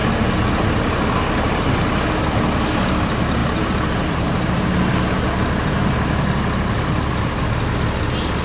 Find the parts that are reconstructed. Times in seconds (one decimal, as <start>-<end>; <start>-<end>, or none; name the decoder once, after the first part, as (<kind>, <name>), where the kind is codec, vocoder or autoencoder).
3.4-4.6 (vocoder, BigVGAN v2)